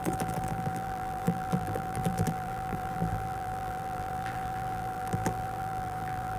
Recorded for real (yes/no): no